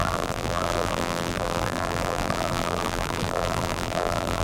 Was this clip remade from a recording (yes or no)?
yes